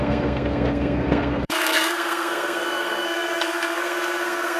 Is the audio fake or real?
fake